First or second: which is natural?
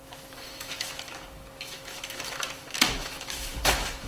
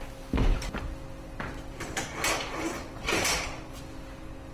second